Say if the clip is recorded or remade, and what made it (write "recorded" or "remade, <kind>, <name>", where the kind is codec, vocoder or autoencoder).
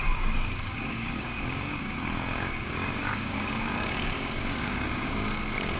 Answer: remade, codec, DAC